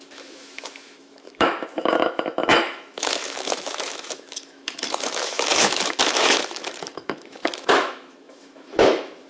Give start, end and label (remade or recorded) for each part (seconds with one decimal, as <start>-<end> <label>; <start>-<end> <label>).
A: 0.0-9.3 remade